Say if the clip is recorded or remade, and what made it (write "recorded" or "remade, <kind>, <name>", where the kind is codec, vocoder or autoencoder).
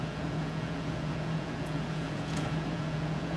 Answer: remade, vocoder, Vocos